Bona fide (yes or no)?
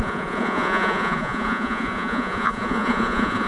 no